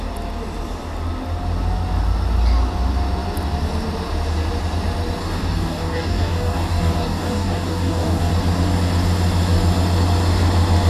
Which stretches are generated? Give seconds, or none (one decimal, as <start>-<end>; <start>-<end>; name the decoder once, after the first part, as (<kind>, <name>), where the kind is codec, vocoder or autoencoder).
5.2-8.3 (codec, DAC)